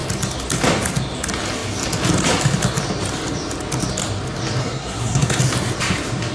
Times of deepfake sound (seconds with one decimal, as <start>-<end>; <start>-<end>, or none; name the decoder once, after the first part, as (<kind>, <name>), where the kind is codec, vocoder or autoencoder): 4.6-5.4 (codec, SNAC)